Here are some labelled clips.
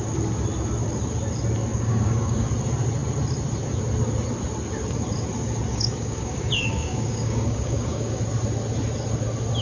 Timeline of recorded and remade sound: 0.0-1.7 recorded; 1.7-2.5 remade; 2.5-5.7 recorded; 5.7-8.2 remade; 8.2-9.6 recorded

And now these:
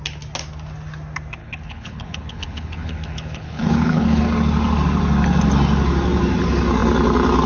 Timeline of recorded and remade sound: 0.0-1.4 recorded; 1.4-4.2 remade; 4.2-7.5 recorded

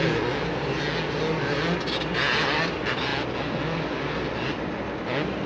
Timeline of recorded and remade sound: 0.0-5.5 recorded

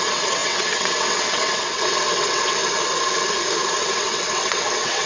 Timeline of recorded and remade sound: 0.0-2.6 remade; 2.6-3.8 recorded; 3.8-5.1 remade

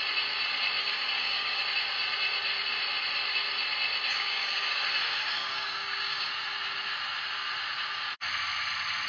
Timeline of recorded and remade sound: 0.0-0.8 recorded; 0.8-1.6 remade; 1.6-4.1 recorded; 4.1-4.8 remade; 4.8-5.4 recorded; 5.4-6.3 remade; 6.3-9.1 recorded

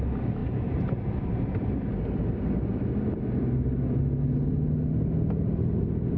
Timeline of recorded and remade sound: 0.0-6.2 recorded

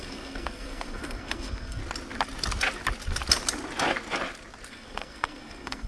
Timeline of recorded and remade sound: 0.0-1.8 remade; 1.8-4.7 recorded; 4.7-5.9 remade

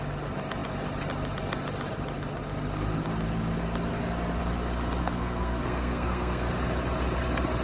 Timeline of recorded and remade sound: 0.0-5.0 recorded; 5.0-6.5 remade; 6.5-7.6 recorded